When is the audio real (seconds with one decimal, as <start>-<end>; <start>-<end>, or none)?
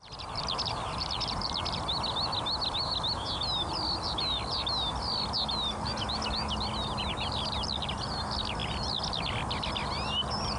0.0-10.6